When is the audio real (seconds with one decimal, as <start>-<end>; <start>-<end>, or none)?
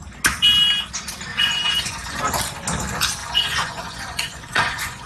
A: 0.0-1.3; 2.2-3.2